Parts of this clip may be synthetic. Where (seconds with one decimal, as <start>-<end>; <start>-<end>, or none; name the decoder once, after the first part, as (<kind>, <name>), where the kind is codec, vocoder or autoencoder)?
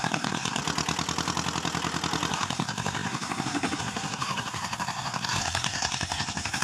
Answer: 0.0-0.6 (codec, SNAC); 2.3-6.6